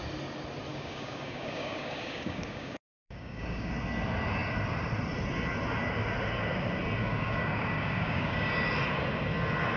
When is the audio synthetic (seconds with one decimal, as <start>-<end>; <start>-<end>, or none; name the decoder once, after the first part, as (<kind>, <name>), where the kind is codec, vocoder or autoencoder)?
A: 0.7-3.7 (codec, DAC); 7.0-8.5

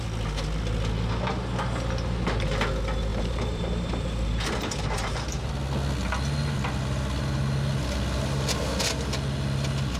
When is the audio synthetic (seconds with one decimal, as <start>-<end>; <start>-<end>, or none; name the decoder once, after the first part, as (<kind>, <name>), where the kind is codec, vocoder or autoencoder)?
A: 3.1-5.5 (vocoder, BigVGAN v2)

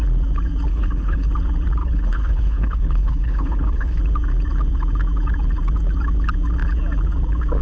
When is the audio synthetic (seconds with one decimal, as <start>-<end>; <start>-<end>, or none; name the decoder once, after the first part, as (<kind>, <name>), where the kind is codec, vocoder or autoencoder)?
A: 0.7-1.3 (codec, HILCodec); 1.8-4.0

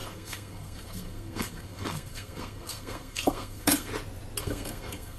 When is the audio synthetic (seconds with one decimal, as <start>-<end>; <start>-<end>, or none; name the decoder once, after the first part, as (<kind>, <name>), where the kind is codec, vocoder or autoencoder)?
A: 0.0-3.9 (codec, SNAC); 4.4-5.2

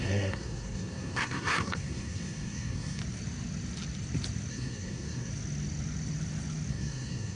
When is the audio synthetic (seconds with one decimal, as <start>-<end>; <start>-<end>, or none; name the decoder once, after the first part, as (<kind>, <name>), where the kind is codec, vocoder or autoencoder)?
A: 0.0-3.0 (codec, SNAC); 4.5-5.3; 6.7-7.4